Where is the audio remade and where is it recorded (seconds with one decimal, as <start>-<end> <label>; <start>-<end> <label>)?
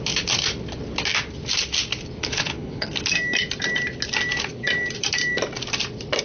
0.0-2.2 recorded; 2.2-2.9 remade; 2.9-6.2 recorded